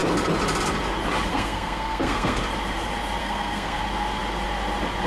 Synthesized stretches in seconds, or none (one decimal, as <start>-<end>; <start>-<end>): 1.3-2.4; 3.2-3.8